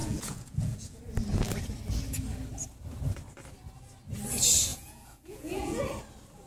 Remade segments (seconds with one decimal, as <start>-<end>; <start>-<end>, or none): 0.0-1.0; 4.7-5.8